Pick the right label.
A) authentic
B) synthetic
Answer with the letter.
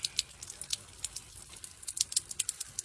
A